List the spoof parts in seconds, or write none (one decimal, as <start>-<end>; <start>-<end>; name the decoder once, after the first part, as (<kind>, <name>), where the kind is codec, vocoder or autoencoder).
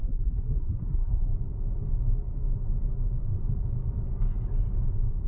0.0-1.3 (codec, SNAC)